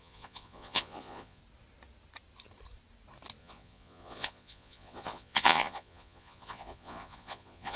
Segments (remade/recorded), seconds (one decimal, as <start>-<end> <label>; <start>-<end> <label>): 0.0-1.4 remade; 1.4-3.4 recorded; 3.4-7.8 remade